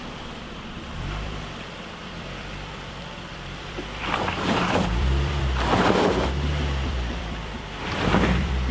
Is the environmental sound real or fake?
fake